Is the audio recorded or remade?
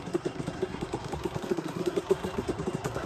remade